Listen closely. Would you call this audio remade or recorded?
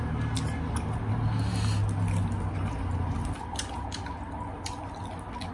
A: recorded